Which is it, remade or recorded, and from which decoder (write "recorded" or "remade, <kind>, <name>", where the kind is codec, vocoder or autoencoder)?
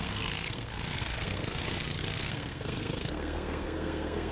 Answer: remade, codec, SNAC